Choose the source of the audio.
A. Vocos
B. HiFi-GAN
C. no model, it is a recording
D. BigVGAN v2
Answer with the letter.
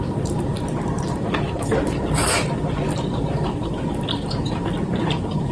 D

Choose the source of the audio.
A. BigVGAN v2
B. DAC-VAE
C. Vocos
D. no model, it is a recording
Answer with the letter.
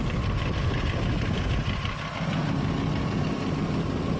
D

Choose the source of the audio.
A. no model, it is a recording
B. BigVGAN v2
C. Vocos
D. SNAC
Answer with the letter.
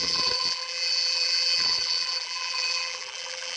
B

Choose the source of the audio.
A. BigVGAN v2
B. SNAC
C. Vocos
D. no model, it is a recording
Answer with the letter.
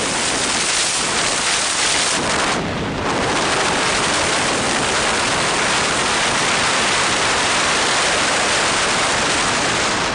A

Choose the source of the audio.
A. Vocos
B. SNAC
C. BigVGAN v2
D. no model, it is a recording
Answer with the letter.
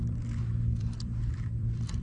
C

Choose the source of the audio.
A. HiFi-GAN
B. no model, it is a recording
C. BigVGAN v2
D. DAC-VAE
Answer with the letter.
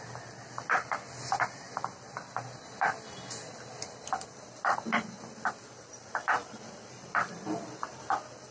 B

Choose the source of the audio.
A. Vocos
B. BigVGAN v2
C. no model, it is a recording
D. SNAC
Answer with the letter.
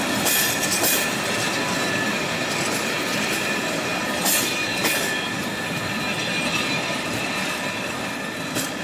C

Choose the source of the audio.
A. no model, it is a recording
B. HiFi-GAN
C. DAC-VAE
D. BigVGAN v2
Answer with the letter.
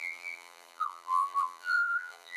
D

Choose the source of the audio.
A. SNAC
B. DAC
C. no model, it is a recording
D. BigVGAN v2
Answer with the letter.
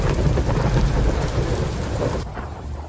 D